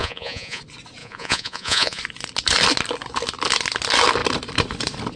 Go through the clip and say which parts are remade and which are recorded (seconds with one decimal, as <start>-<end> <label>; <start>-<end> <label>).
0.0-0.6 remade; 0.6-1.0 recorded; 1.0-2.0 remade; 2.0-5.2 recorded